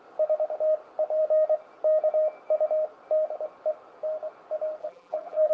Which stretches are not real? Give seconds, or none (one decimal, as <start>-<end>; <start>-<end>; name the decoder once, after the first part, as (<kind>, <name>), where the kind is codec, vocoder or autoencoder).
4.8-5.5 (vocoder, BigVGAN v2)